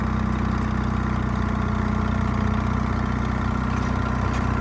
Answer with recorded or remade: recorded